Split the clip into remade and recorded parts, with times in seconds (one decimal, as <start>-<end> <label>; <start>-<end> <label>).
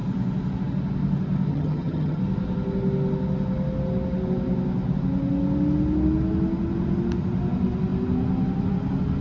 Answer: 0.0-1.5 recorded; 1.5-2.2 remade; 2.2-9.2 recorded